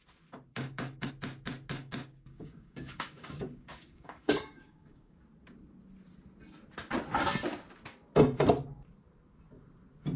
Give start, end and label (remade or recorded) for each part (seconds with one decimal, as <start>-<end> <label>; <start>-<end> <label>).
0.0-0.5 recorded; 0.5-1.1 remade; 1.1-1.8 recorded; 1.8-5.2 remade; 5.2-10.2 recorded